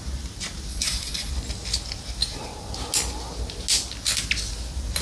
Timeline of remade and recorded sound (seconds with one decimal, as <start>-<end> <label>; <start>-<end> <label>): 0.0-0.7 recorded; 0.7-1.3 remade; 1.3-5.0 recorded